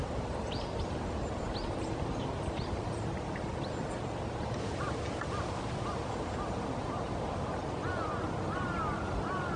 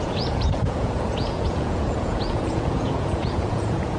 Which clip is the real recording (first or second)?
first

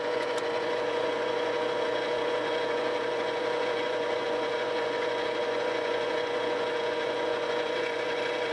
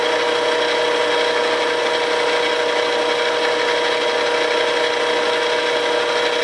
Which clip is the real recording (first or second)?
second